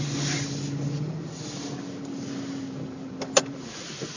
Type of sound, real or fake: real